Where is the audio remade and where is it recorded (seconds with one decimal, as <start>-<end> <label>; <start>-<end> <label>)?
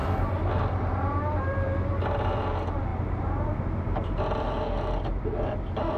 0.0-6.0 recorded